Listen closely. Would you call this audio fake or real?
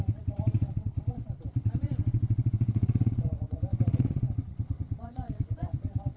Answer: fake